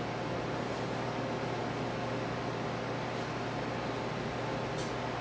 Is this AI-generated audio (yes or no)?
no